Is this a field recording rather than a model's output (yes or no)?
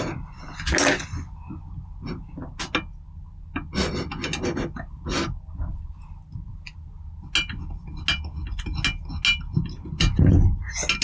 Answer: yes